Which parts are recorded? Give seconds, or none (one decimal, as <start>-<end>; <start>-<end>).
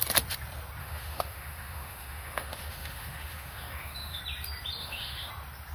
0.0-0.8; 4.2-4.8; 5.3-5.7